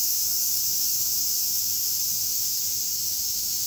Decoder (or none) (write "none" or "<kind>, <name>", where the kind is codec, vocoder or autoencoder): autoencoder, DAC-VAE